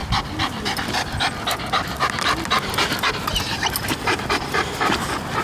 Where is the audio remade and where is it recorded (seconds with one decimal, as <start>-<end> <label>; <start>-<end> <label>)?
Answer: 0.0-5.4 recorded